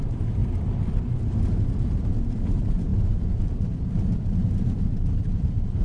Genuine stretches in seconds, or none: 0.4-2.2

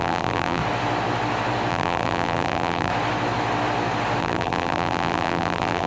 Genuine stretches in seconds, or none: 0.6-1.7; 2.9-4.2

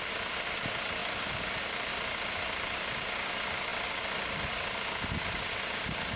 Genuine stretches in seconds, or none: 0.0-6.2

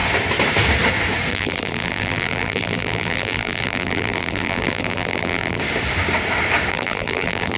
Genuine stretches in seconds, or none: 0.0-1.3; 5.6-6.7

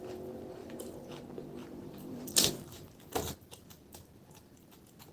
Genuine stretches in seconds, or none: 0.0-0.6; 1.2-1.6

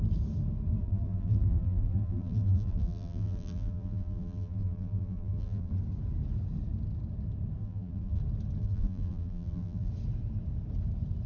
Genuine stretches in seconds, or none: 0.0-0.8; 5.7-7.6; 8.2-8.6; 9.9-11.3

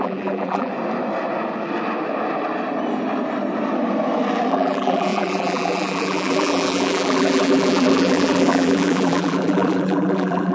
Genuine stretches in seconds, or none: 0.7-4.5